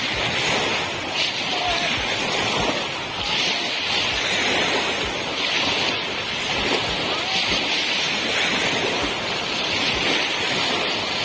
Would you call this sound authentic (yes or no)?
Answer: yes